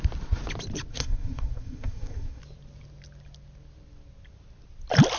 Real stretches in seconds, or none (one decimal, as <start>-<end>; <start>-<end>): 0.0-0.9; 2.4-5.2